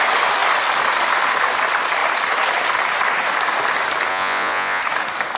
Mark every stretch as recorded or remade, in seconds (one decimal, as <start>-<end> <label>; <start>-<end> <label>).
0.0-4.1 recorded; 4.1-4.8 remade; 4.8-5.4 recorded